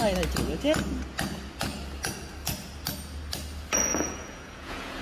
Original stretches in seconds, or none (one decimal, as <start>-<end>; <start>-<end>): 0.0-3.9